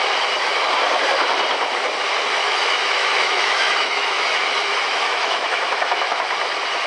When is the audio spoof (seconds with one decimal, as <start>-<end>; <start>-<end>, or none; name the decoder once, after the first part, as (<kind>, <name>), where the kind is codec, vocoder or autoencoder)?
2.4-6.2 (autoencoder, DAC-VAE)